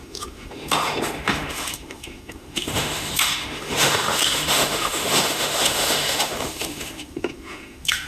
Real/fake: fake